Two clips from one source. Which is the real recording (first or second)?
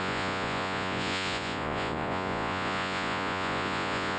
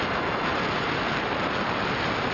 second